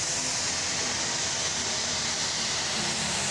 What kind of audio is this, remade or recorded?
remade